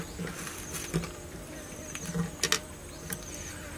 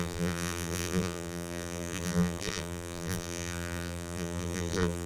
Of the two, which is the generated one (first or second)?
second